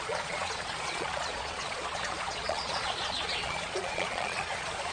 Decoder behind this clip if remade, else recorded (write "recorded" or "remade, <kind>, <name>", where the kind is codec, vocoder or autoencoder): remade, vocoder, Vocos